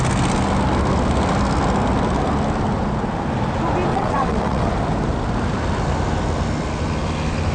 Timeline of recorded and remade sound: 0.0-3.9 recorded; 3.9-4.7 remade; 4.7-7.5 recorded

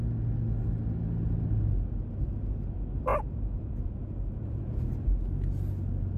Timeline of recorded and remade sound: 0.0-3.1 recorded; 3.1-4.8 remade; 4.8-6.2 recorded

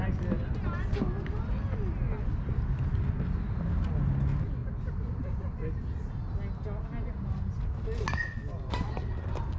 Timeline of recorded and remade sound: 0.0-9.6 recorded